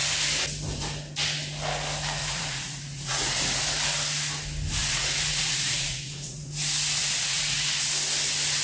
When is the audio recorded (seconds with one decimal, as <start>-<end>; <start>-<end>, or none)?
0.0-2.2; 3.6-4.8; 6.5-7.0; 7.9-8.6